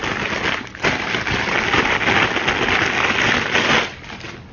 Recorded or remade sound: recorded